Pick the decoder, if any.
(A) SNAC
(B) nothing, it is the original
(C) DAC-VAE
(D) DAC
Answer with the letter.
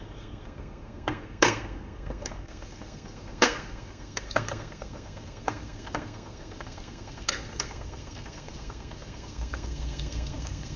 A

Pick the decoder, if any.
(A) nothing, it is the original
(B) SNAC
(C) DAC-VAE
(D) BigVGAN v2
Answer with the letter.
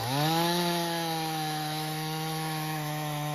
C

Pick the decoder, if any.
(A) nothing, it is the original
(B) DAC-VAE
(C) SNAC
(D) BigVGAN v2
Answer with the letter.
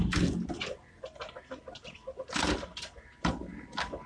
A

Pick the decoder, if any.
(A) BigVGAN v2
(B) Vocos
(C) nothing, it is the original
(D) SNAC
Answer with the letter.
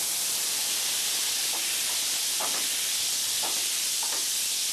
C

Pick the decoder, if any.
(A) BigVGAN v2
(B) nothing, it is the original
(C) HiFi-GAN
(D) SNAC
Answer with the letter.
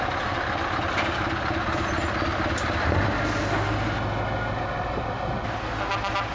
B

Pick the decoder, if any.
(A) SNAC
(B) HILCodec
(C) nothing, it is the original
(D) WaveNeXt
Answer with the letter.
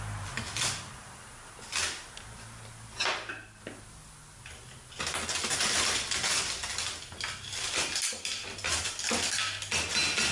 C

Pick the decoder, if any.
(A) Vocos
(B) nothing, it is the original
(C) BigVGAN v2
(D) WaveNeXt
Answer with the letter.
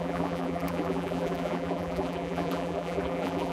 C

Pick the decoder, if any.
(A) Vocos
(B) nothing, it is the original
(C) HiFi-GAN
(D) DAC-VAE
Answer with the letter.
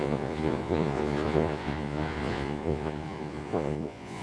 A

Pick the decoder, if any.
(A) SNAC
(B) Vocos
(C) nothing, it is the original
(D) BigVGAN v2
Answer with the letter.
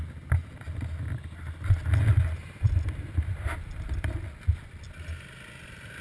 C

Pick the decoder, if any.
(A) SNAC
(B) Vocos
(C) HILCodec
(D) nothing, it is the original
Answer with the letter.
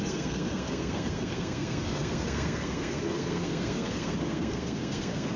A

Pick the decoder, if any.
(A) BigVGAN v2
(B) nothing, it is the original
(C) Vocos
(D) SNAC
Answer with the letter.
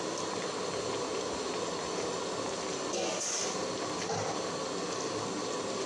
B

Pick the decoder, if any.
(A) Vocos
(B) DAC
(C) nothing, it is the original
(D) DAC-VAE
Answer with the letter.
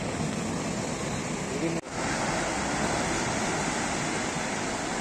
C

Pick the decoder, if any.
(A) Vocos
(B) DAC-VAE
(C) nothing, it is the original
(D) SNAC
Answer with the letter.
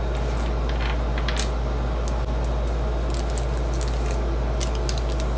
C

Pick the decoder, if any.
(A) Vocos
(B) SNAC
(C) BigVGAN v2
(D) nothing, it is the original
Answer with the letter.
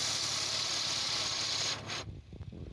D